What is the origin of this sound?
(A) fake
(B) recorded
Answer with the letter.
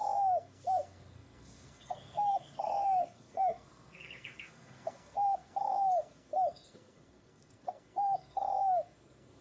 A